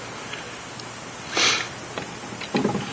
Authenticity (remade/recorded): recorded